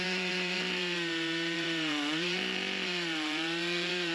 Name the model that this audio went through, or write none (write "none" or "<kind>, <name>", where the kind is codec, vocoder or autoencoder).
vocoder, BigVGAN v2